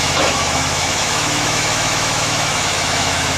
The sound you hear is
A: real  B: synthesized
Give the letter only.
B